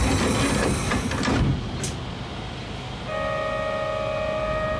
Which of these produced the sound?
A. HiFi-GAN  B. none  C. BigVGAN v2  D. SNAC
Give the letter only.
B